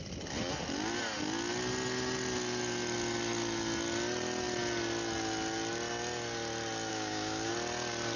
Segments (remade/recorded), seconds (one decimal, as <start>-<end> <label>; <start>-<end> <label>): 0.0-6.9 recorded; 6.9-7.5 remade; 7.5-8.2 recorded